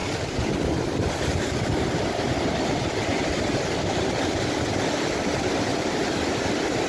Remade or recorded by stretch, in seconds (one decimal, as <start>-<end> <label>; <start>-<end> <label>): 0.0-4.1 recorded; 4.1-5.7 remade; 5.7-6.9 recorded